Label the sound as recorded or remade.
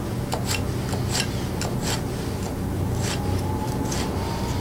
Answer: recorded